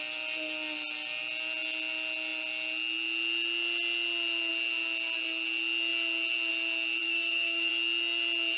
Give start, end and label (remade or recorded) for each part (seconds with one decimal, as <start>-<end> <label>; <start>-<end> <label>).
0.0-7.0 recorded; 7.0-7.7 remade; 7.7-8.6 recorded